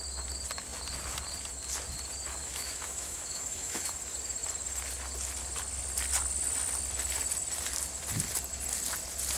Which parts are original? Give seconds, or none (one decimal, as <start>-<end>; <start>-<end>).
0.0-2.4; 3.9-9.4